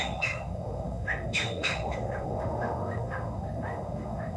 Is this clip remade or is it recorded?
remade